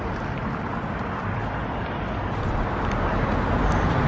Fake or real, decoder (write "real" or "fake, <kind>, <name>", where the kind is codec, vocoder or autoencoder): real